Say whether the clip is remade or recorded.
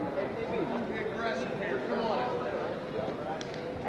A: recorded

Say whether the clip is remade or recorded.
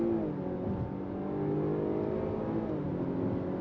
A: recorded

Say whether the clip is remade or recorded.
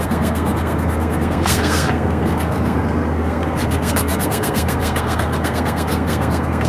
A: remade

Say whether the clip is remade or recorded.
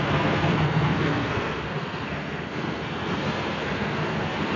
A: remade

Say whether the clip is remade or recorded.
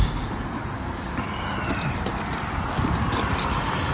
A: recorded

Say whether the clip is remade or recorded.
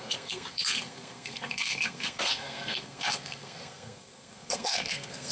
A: remade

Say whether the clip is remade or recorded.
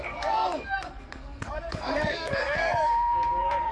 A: remade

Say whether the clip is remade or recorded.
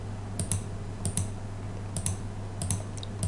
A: recorded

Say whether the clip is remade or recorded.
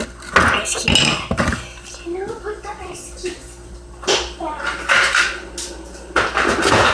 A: recorded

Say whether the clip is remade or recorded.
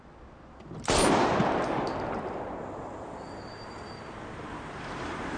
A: recorded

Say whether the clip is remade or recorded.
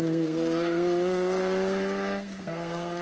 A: remade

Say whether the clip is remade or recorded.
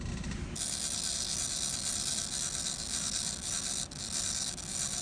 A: recorded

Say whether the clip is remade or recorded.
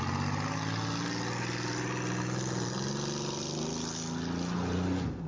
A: recorded